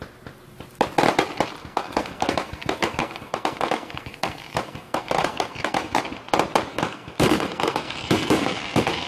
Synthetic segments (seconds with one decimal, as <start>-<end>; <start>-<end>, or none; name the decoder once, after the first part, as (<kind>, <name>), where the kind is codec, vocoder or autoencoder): 1.6-6.0 (codec, SNAC); 6.7-9.1